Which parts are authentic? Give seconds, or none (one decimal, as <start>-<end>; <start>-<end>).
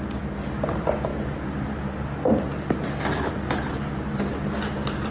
0.0-5.1